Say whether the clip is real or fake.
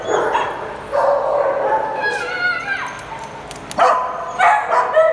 real